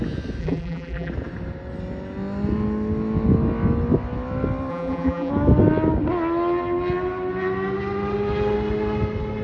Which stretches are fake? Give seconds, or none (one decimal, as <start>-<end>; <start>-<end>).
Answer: 0.4-1.1; 4.7-5.3